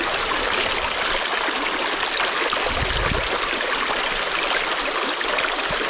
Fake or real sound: real